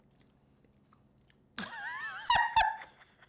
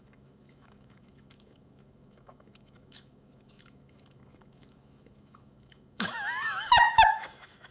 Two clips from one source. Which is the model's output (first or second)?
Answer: second